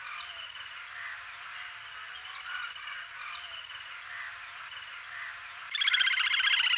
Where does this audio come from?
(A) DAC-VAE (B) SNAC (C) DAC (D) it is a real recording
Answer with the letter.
D